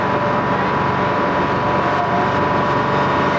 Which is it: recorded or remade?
recorded